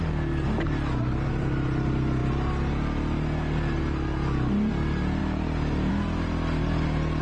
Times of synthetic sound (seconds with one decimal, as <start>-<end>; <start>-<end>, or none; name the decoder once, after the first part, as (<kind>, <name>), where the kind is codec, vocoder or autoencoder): none